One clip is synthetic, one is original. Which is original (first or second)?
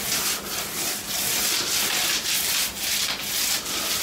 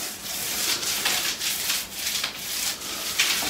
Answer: first